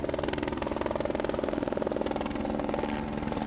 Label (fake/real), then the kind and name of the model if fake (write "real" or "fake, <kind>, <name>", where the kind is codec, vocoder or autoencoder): real